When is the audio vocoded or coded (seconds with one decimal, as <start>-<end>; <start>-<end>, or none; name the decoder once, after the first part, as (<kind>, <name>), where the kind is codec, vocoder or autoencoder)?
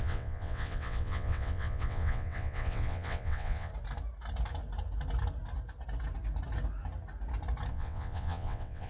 0.0-3.7 (vocoder, WaveNeXt); 7.7-8.9